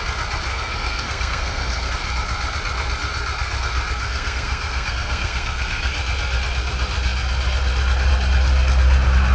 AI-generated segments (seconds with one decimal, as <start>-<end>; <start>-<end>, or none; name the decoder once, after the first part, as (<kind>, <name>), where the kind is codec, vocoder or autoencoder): 0.5-1.9 (codec, SNAC); 4.0-5.9